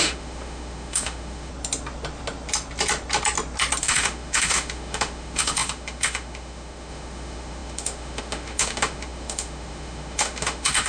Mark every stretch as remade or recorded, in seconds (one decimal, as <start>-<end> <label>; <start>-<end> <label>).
0.0-1.5 remade; 1.5-3.8 recorded; 3.8-10.9 remade